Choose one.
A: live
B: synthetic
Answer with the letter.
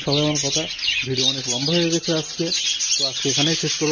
A